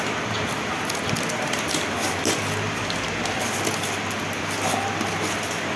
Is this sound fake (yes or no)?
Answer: no